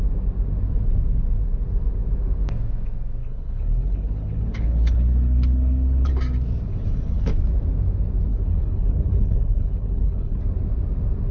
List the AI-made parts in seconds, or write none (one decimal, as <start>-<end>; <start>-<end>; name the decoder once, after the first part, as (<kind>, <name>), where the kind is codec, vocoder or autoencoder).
3.2-6.1 (codec, HILCodec); 6.7-7.3; 8.3-10.4